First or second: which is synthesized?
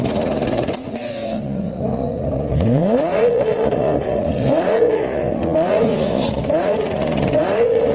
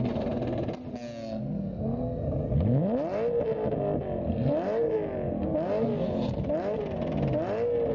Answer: first